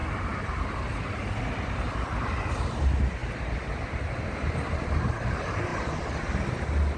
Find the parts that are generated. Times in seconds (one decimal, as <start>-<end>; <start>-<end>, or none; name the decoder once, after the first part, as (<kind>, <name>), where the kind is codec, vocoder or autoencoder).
0.0-1.4 (vocoder, BigVGAN v2); 5.7-6.6